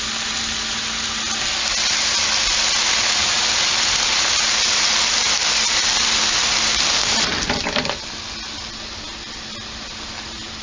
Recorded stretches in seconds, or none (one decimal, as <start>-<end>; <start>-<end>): 0.0-10.6